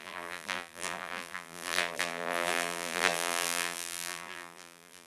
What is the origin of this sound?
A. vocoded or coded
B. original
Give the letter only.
A